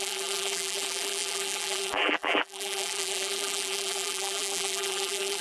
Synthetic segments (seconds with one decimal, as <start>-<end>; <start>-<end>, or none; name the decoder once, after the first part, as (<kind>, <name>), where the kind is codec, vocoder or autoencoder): 0.0-5.4 (vocoder, BigVGAN v2)